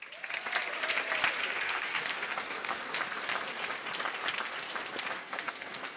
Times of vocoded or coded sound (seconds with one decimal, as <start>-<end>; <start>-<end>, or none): 1.4-2.8; 5.2-6.0